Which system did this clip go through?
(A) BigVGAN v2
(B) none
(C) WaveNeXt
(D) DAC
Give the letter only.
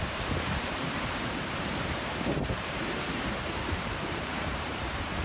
A